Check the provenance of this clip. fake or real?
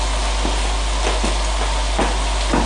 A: real